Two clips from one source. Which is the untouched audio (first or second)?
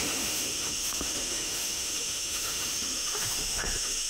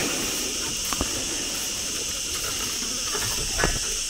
second